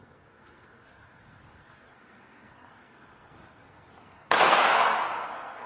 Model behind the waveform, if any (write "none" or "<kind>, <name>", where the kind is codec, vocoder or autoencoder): codec, SNAC